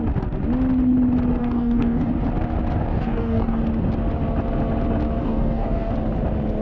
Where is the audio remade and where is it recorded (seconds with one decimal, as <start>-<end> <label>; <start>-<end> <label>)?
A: 0.0-1.4 recorded; 1.4-2.1 remade; 2.1-2.9 recorded; 2.9-3.6 remade; 3.6-5.2 recorded; 5.2-5.9 remade; 5.9-6.6 recorded